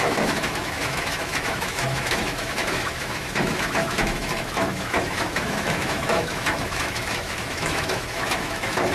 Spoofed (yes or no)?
yes